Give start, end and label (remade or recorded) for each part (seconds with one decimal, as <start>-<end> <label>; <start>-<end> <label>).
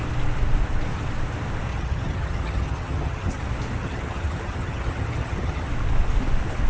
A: 0.0-1.7 recorded; 1.7-3.4 remade; 3.4-3.8 recorded; 3.8-5.7 remade; 5.7-6.7 recorded